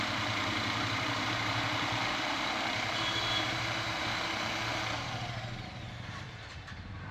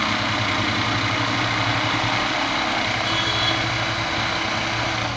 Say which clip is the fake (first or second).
first